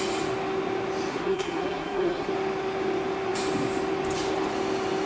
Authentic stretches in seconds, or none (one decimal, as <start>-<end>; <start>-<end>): 0.0-1.1; 2.3-5.1